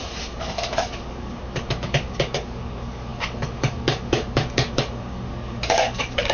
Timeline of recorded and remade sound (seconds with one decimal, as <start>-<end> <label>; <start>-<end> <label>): 0.0-6.3 remade